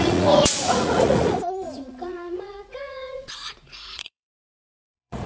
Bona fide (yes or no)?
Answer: no